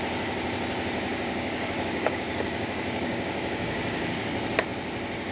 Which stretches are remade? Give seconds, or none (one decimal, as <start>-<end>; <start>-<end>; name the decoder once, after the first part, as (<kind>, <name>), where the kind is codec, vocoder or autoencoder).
1.1-4.3 (codec, DAC)